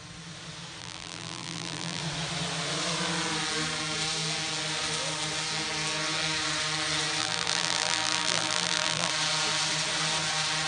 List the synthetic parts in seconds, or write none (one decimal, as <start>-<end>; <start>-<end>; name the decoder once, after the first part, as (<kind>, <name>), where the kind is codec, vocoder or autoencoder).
0.8-2.0 (vocoder, BigVGAN v2); 7.2-9.1